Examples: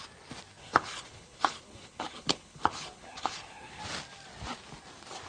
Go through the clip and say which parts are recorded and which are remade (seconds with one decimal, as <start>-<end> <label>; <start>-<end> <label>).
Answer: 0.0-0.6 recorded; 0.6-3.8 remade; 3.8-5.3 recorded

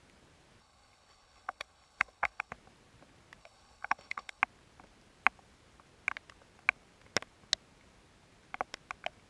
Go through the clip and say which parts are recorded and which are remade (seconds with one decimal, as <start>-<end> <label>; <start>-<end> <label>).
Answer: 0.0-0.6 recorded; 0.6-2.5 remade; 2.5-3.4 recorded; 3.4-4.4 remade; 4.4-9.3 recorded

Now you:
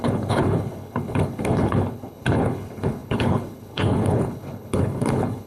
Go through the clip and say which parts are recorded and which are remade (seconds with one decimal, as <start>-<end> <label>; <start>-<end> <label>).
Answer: 0.0-5.5 remade

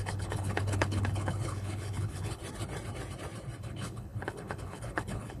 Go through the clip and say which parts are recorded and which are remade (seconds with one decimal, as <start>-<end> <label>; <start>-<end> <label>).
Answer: 0.0-2.4 remade; 2.4-3.6 recorded; 3.6-5.4 remade

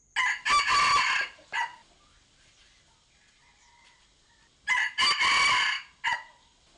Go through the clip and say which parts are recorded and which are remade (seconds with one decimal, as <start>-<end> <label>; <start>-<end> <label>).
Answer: 0.0-6.8 recorded